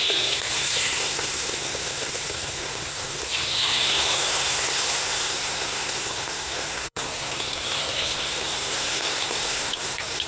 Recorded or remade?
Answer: remade